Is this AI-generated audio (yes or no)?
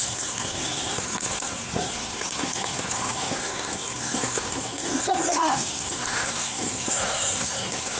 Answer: yes